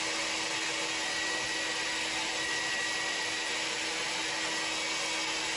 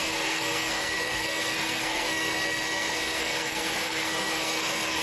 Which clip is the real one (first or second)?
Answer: first